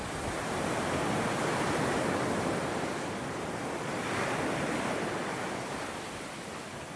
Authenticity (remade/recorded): recorded